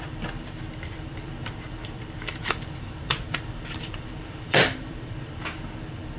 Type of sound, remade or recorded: remade